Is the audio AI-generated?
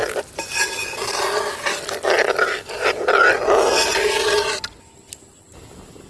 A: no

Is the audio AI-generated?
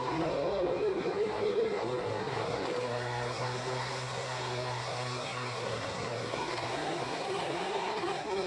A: yes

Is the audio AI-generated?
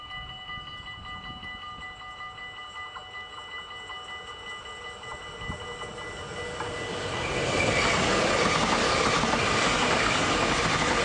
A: no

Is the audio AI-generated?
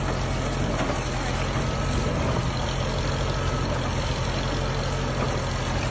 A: no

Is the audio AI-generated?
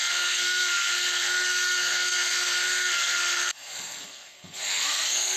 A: yes